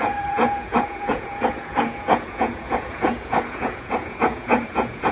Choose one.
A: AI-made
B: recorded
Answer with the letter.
A